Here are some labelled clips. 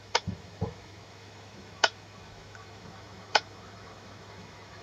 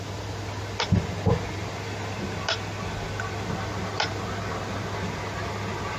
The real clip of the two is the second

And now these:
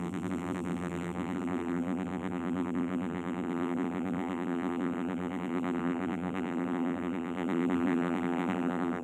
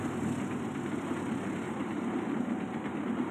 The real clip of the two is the second